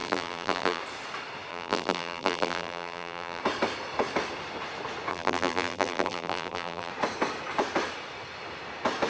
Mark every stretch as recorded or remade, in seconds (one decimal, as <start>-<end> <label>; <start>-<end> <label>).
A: 0.0-0.8 remade; 0.8-1.5 recorded; 1.5-3.4 remade; 3.4-5.1 recorded; 5.1-6.9 remade; 6.9-9.1 recorded